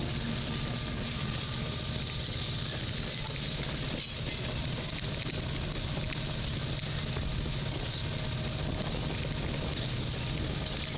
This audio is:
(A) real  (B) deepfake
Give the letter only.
A